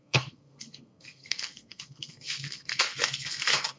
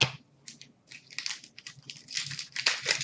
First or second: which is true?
second